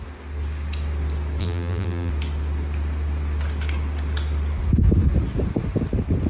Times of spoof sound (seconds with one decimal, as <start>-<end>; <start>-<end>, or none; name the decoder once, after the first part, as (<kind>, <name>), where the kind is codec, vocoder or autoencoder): 1.4-2.1 (vocoder, BigVGAN v2)